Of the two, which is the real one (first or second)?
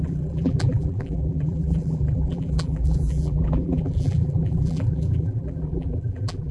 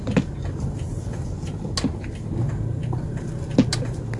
second